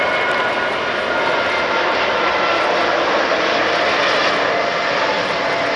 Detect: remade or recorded recorded